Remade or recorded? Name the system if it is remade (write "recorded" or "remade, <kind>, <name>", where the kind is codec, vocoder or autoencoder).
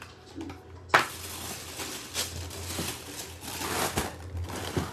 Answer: recorded